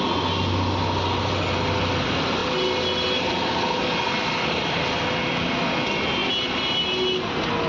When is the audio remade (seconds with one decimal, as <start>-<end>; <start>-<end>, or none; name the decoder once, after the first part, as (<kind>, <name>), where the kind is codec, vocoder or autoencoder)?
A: 6.2-6.8 (vocoder, BigVGAN v2)